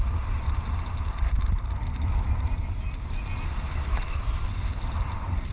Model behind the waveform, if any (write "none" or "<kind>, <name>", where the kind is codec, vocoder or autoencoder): none